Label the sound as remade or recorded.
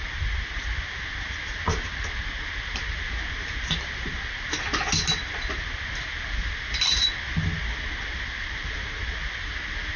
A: recorded